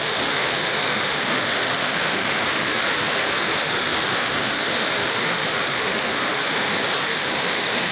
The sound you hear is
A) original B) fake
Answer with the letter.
B